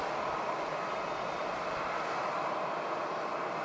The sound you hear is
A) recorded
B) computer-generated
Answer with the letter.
A